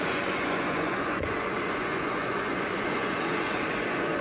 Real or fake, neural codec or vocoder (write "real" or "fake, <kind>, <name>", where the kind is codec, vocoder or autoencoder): fake, vocoder, Vocos